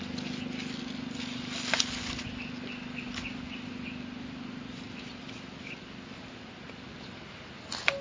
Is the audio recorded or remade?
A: recorded